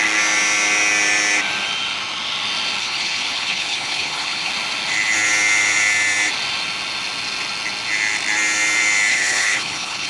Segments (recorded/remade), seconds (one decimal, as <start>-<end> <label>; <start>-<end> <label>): 0.0-2.8 recorded; 2.8-4.5 remade; 4.5-9.1 recorded; 9.1-10.1 remade